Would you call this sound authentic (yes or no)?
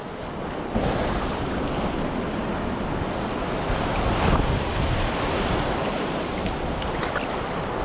yes